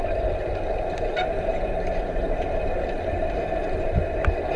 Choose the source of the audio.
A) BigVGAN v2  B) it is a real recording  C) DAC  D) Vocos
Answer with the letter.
A